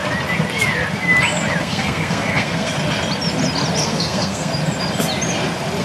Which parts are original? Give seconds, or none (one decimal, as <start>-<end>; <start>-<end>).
0.0-1.6; 2.7-3.8; 4.5-5.8